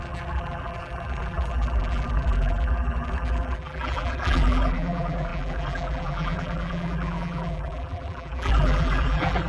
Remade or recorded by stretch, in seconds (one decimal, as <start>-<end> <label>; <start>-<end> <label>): 0.0-9.5 remade